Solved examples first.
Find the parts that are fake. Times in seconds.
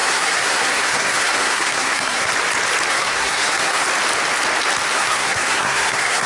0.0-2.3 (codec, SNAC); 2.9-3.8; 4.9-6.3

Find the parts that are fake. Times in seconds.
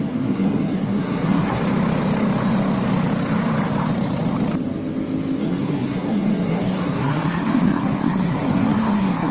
0.0-1.6 (codec, SNAC); 5.4-9.3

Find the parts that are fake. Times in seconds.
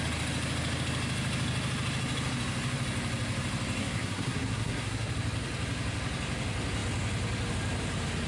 3.8-5.1 (codec, SNAC)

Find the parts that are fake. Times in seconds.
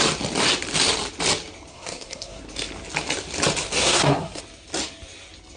1.7-2.4 (codec, SNAC); 3.8-4.4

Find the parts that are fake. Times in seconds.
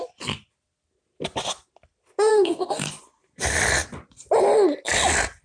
2.3-2.9 (codec, SNAC)